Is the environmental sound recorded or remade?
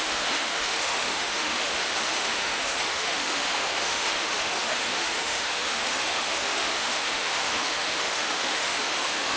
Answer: remade